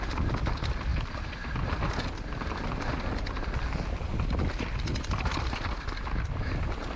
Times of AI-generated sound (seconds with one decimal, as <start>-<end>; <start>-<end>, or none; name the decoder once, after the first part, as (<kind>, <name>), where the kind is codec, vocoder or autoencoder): none